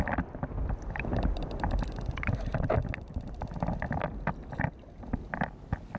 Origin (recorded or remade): recorded